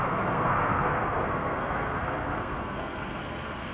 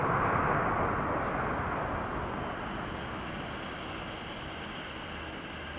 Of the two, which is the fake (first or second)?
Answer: first